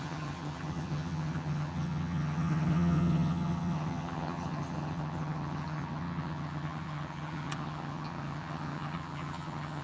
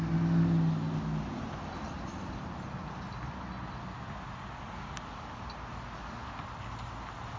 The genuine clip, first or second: second